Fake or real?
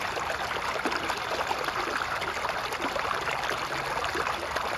real